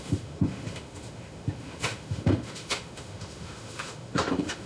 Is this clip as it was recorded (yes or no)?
no